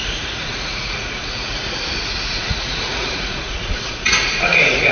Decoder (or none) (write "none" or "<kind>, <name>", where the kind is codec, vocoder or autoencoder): vocoder, Vocos